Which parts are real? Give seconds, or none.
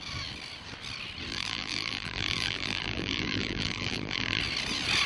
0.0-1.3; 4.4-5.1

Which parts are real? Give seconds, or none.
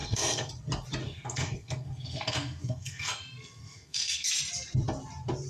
0.5-1.0; 4.3-5.5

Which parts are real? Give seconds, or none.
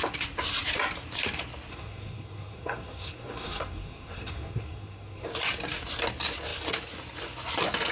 0.0-1.7; 5.3-7.9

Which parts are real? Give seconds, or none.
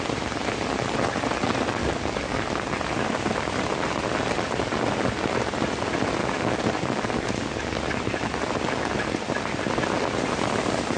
0.0-1.8; 2.4-6.2; 7.8-11.0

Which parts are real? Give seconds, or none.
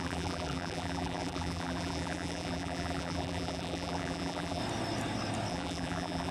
4.6-5.5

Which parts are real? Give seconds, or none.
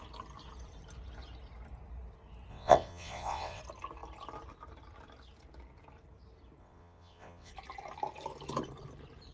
0.0-2.5; 3.6-6.6; 7.5-9.3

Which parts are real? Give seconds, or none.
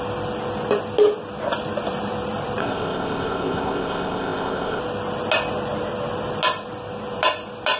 0.0-2.6; 4.8-7.8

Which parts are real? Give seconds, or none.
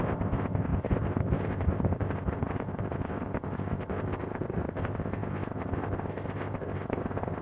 none